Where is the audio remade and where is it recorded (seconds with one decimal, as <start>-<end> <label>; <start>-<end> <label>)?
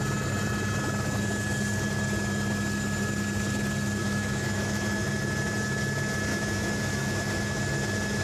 0.0-4.0 recorded; 4.0-5.1 remade; 5.1-6.3 recorded; 6.3-7.6 remade; 7.6-8.2 recorded